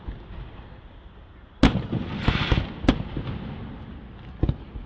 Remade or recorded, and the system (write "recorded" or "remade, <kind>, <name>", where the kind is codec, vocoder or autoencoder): recorded